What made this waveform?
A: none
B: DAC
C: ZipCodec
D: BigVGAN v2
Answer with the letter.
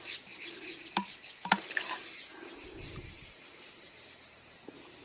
D